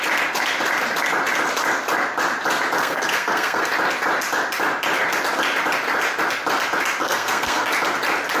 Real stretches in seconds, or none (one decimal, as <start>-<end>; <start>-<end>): 0.0-2.8; 3.7-7.0; 7.7-8.4